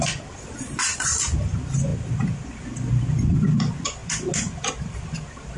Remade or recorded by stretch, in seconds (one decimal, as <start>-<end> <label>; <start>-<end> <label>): 0.0-5.6 recorded

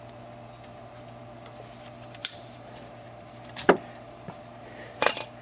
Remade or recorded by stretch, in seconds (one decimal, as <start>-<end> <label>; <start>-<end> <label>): 0.0-2.2 recorded; 2.2-5.4 remade

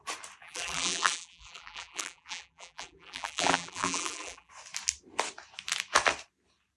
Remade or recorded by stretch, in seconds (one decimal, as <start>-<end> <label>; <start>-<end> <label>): 0.0-0.4 recorded; 0.4-4.5 remade; 4.5-6.8 recorded

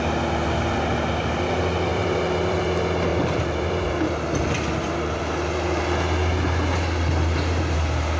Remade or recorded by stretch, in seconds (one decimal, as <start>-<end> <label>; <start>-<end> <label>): 0.0-1.9 recorded; 1.9-2.6 remade; 2.6-3.1 recorded; 3.1-3.8 remade; 3.8-8.2 recorded

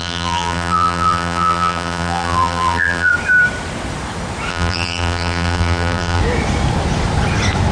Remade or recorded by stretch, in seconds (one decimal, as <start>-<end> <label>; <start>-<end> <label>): 0.0-3.1 remade; 3.1-4.5 recorded; 4.5-6.2 remade; 6.2-7.7 recorded

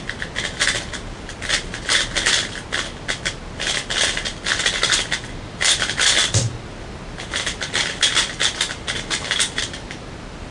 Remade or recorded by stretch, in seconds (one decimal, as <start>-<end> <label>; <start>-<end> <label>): 0.0-10.5 recorded

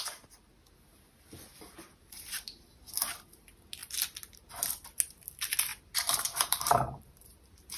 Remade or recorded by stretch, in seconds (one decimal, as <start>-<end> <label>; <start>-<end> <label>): 0.0-1.5 recorded; 1.5-2.9 remade; 2.9-5.7 recorded; 5.7-7.8 remade